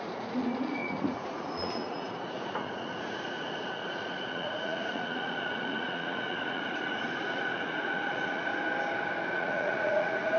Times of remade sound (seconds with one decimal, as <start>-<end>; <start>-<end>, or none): 0.0-8.5; 9.3-10.4